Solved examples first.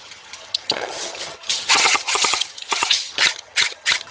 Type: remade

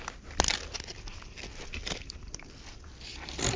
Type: recorded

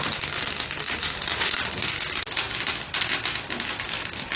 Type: recorded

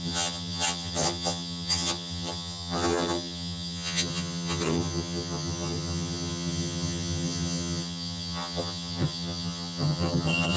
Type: remade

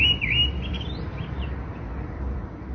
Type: recorded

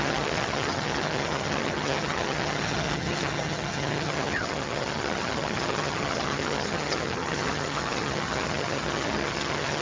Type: remade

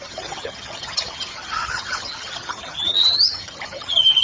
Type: remade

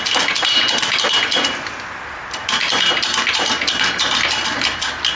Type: recorded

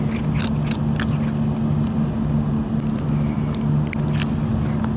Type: recorded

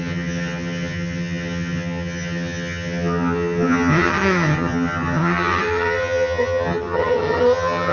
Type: remade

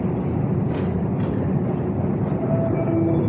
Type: recorded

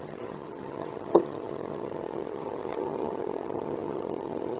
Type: remade